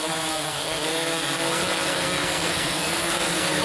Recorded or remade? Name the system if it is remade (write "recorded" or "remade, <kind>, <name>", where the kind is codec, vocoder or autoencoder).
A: remade, codec, SNAC